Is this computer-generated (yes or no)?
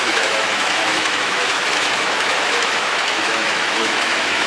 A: yes